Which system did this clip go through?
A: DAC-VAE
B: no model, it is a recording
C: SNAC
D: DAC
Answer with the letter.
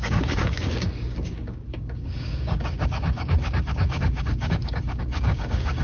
D